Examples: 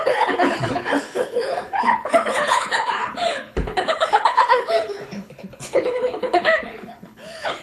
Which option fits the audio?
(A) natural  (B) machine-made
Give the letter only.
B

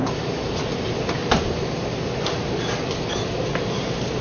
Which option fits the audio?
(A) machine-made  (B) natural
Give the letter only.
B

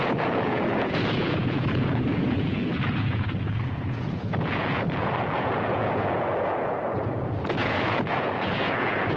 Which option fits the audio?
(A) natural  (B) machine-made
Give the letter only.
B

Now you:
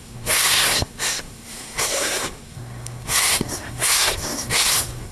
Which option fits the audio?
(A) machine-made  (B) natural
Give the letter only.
A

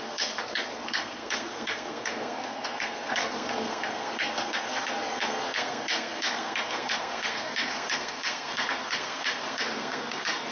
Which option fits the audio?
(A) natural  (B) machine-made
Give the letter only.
B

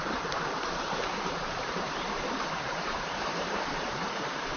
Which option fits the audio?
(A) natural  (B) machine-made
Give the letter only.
B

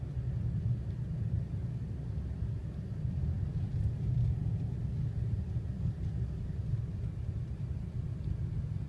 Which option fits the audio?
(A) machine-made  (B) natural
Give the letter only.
B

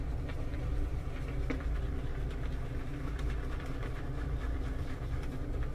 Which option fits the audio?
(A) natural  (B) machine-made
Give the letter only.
B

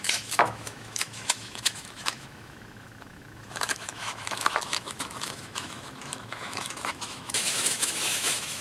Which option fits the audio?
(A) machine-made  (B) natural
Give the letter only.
A